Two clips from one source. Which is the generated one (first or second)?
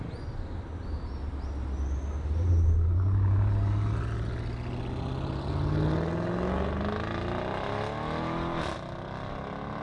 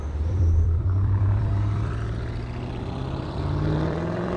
second